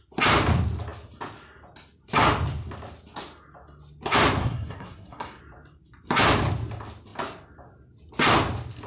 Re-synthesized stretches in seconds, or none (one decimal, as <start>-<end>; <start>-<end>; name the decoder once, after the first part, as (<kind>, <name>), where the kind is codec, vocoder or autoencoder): 4.4-5.4 (codec, SNAC)